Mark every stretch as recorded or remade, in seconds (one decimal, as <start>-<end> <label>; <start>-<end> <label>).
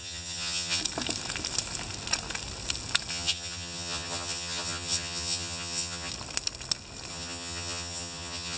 0.0-0.8 remade; 0.8-3.1 recorded; 3.1-6.1 remade; 6.1-7.1 recorded; 7.1-8.6 remade